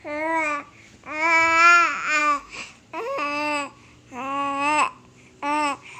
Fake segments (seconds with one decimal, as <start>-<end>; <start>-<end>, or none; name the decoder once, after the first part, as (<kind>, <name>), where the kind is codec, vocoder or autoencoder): 2.2-2.7 (autoencoder, DAC-VAE)